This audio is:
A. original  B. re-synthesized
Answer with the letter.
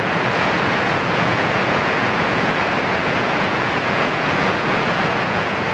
B